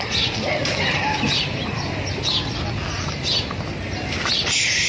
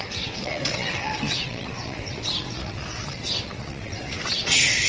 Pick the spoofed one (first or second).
second